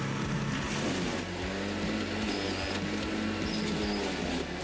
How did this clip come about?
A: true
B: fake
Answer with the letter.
A